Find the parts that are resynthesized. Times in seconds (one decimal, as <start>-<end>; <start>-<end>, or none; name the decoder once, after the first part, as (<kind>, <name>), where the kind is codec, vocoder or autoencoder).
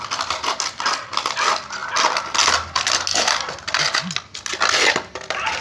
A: none